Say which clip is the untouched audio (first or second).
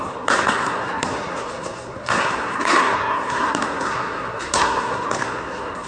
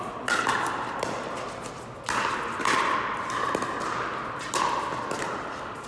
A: second